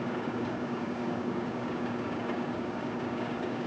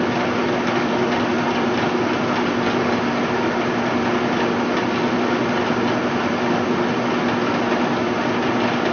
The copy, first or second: first